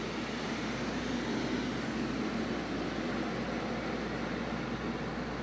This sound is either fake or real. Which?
real